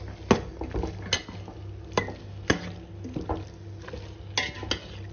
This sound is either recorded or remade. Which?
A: recorded